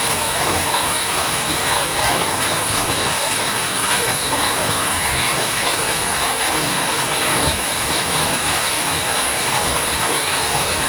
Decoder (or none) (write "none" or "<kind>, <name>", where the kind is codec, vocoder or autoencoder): codec, DAC